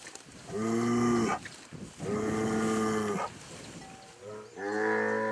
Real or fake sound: real